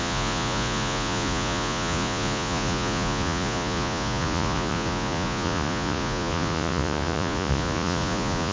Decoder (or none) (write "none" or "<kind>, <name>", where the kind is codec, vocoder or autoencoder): vocoder, Vocos